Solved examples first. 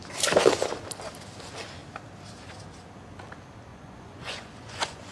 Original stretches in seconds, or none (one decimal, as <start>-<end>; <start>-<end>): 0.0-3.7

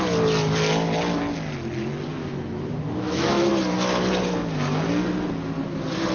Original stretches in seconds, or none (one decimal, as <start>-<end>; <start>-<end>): 0.0-2.2; 3.5-6.1

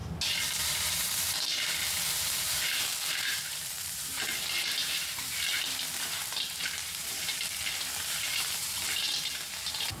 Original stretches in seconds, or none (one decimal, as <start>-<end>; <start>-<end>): 0.0-0.6

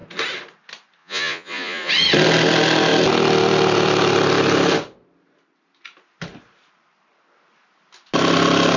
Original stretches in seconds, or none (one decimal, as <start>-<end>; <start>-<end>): 0.0-1.0; 1.9-8.8

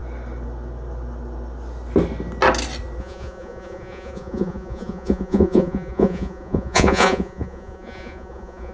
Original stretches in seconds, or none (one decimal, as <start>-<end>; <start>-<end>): 0.0-3.0

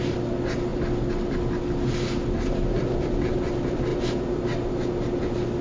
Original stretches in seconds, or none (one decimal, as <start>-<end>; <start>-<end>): 0.0-5.6

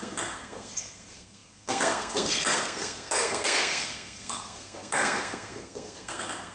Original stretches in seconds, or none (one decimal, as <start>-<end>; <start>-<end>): none

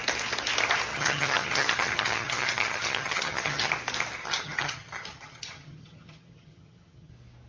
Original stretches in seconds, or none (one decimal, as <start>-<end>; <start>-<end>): 0.0-0.9; 3.7-4.2; 7.1-7.5